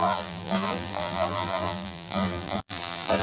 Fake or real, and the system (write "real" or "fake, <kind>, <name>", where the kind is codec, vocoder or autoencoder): fake, vocoder, BigVGAN v2